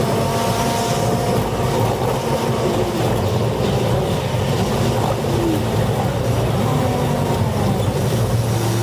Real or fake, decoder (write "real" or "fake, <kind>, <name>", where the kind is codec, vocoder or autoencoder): real